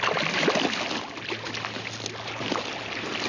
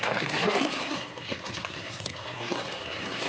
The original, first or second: first